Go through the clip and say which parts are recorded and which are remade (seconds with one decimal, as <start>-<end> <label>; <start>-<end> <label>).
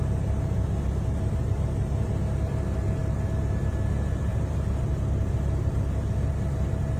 0.0-4.3 recorded; 4.3-4.8 remade; 4.8-7.0 recorded